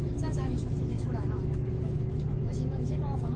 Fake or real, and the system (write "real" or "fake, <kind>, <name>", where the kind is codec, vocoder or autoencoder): fake, autoencoder, DAC-VAE